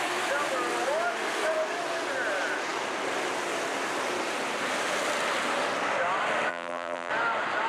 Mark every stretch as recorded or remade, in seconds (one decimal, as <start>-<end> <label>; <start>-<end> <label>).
0.0-6.5 recorded; 6.5-7.1 remade; 7.1-7.7 recorded

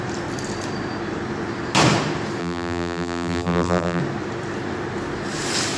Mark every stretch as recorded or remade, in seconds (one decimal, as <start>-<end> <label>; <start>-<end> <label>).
0.0-2.4 recorded; 2.4-4.0 remade; 4.0-5.8 recorded

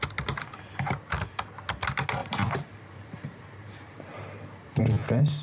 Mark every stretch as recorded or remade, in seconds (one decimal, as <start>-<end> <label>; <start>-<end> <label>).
0.0-2.2 recorded; 2.2-4.8 remade; 4.8-5.4 recorded

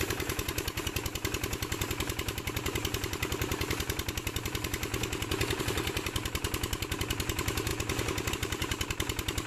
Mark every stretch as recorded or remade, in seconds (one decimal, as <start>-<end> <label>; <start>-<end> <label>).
0.0-4.9 remade; 4.9-5.6 recorded; 5.6-7.7 remade; 7.7-8.3 recorded; 8.3-9.5 remade

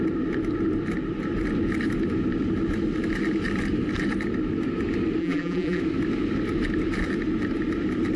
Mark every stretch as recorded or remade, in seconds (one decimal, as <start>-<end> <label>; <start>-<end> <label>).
0.0-5.2 recorded; 5.2-5.8 remade; 5.8-8.2 recorded

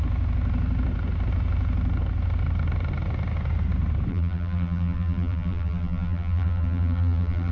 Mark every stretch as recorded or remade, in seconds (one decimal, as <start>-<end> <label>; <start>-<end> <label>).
0.0-4.1 recorded; 4.1-7.5 remade

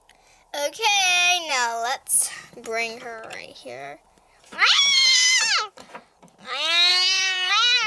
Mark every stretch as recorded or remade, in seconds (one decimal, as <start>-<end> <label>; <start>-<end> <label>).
0.0-3.3 recorded; 3.3-5.4 remade; 5.4-6.9 recorded; 6.9-7.5 remade; 7.5-7.9 recorded